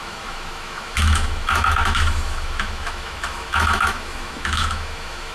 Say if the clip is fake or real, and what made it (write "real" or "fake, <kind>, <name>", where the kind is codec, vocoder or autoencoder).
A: fake, autoencoder, DAC-VAE